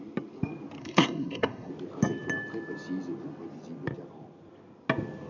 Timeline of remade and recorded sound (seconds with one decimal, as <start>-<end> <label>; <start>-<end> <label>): 0.0-0.8 recorded; 0.8-1.7 remade; 1.7-5.3 recorded